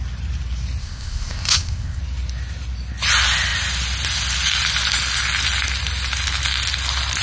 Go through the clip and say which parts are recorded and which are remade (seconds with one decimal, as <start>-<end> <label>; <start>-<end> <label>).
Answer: 0.0-0.8 recorded; 0.8-2.0 remade; 2.0-7.2 recorded